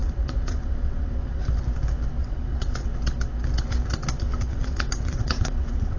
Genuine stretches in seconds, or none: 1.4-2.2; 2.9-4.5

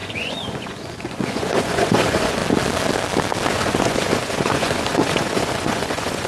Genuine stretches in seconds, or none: 2.4-3.5

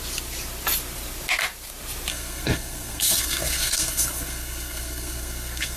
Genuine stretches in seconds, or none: 0.0-2.1

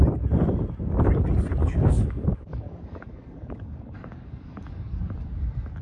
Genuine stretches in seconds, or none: 0.0-1.6; 5.1-5.8

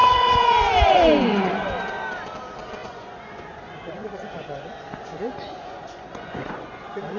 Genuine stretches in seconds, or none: 1.8-2.8

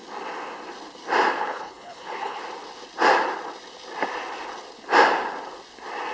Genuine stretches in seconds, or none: 0.0-1.4; 2.4-6.1

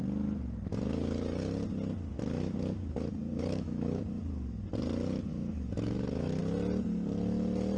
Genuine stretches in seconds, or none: 0.0-3.3; 4.0-5.3; 6.4-7.8

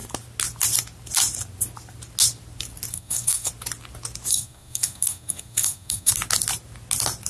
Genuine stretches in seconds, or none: 0.0-2.9; 3.5-4.3; 6.1-7.3